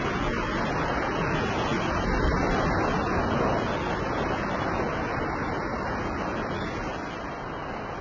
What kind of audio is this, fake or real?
real